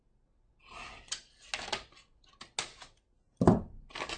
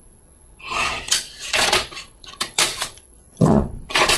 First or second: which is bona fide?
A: first